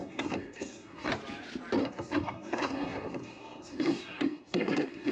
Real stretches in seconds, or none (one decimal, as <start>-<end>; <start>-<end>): 1.1-1.8